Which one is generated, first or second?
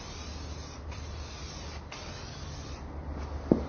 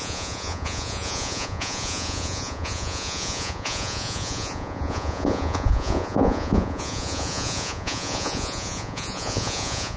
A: second